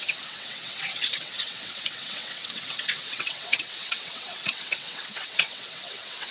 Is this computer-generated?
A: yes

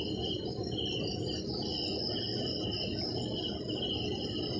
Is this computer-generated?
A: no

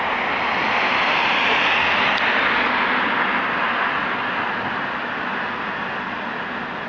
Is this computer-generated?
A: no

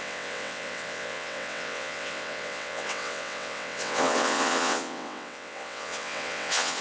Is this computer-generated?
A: yes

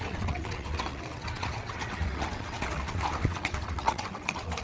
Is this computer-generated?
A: yes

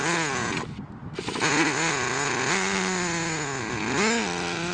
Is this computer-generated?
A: no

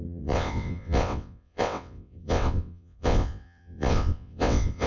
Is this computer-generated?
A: yes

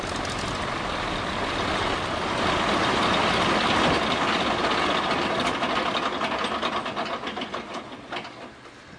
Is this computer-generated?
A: no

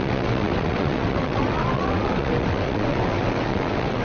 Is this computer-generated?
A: yes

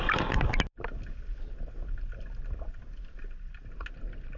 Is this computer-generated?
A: no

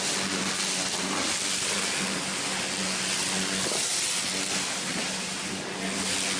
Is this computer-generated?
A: no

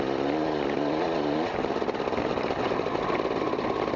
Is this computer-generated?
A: no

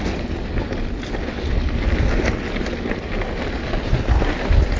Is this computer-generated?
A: no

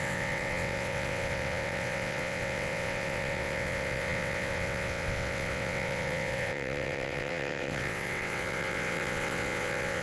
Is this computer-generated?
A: yes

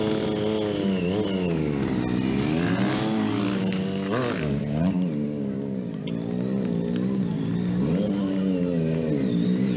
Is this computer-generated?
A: no